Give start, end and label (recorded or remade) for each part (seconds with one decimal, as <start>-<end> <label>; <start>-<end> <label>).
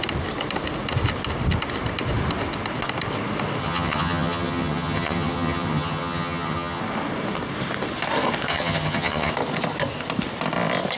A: 0.0-3.6 recorded; 3.6-6.8 remade; 6.8-8.5 recorded; 8.5-9.3 remade; 9.3-11.0 recorded